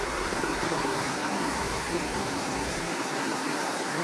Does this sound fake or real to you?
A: fake